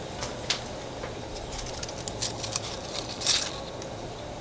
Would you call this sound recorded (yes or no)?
yes